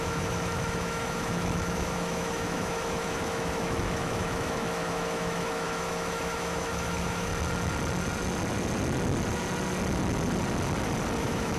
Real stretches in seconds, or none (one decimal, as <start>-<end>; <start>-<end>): 7.3-11.2